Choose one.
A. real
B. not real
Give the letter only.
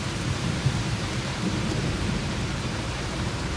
B